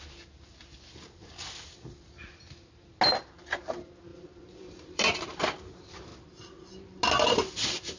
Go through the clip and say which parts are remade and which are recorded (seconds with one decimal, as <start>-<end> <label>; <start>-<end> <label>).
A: 0.0-4.1 recorded; 4.1-5.4 remade; 5.4-8.0 recorded